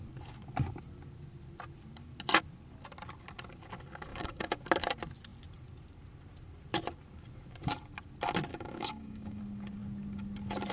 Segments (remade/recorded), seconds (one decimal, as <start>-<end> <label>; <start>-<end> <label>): 0.0-4.1 recorded; 4.1-4.6 remade; 4.6-8.5 recorded; 8.5-9.4 remade; 9.4-10.7 recorded